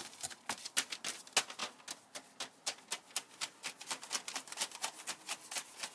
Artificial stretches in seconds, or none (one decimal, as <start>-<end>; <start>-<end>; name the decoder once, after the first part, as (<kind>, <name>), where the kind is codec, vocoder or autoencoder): none